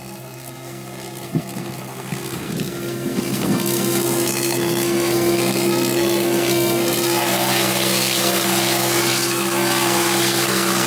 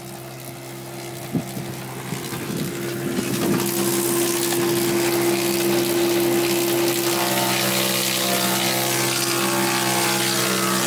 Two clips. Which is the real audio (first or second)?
second